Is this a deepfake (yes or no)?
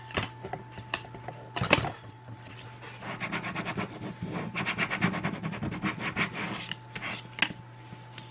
no